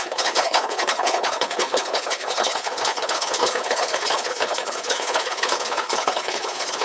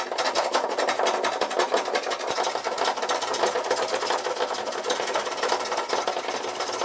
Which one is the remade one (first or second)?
first